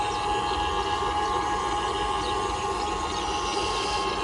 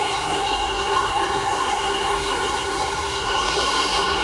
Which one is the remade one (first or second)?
second